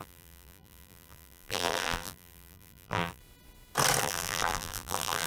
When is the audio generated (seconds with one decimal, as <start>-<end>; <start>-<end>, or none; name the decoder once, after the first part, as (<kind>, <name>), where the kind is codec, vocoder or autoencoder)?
0.0-3.2 (vocoder, BigVGAN v2); 4.0-5.3